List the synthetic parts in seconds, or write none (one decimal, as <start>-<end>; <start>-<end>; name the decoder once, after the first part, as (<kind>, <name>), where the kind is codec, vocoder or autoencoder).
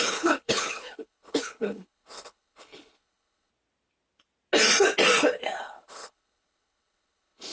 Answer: 0.0-3.5 (codec, HILCodec); 5.6-7.5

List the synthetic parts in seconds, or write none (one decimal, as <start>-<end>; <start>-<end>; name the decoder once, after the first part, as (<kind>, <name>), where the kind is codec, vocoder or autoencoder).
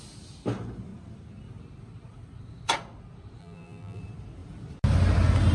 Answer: 3.4-4.0 (vocoder, BigVGAN v2)